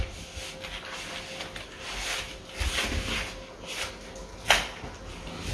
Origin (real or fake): real